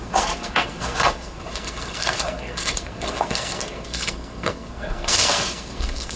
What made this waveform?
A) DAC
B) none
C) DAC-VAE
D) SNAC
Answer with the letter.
D